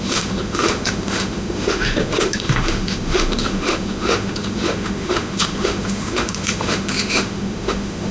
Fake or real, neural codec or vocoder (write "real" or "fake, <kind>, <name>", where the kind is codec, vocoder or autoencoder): fake, autoencoder, DAC-VAE